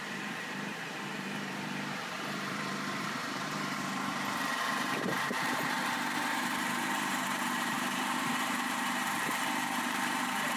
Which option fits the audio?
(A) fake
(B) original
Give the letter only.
A